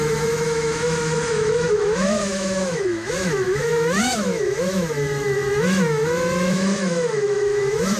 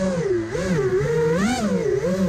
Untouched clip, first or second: second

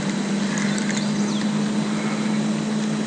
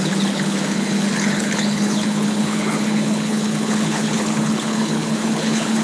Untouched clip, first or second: first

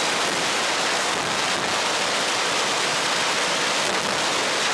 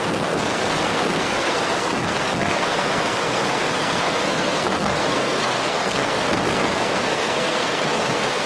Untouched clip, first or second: first